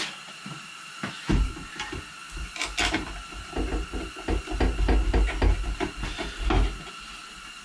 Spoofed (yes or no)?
no